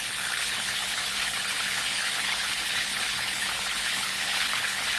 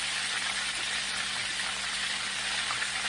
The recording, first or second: second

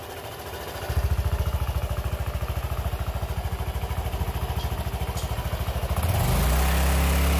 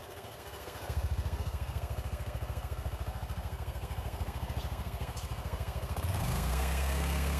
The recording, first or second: first